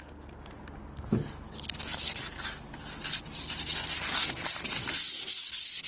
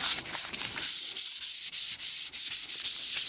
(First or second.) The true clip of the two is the first